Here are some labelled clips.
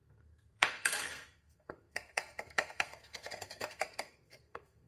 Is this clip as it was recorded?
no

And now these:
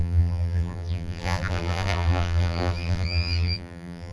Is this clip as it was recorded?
no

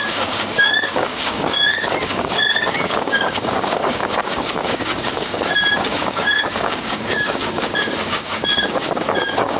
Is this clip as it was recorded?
no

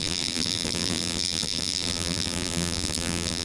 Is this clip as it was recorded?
no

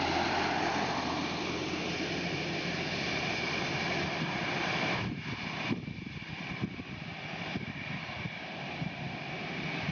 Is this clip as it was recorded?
no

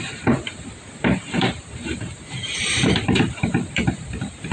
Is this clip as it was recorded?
no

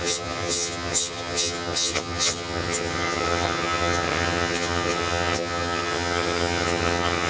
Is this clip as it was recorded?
no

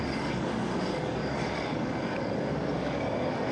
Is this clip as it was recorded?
no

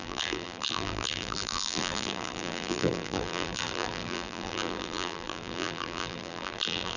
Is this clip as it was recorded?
no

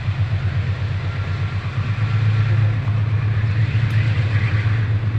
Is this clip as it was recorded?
yes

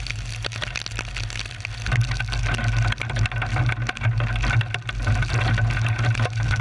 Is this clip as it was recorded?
yes